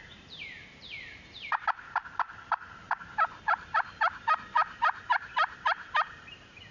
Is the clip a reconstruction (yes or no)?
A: yes